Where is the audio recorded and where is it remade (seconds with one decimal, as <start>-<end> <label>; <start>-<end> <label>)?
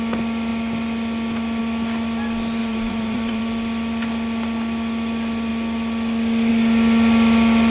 0.0-2.6 recorded; 2.6-3.4 remade; 3.4-7.7 recorded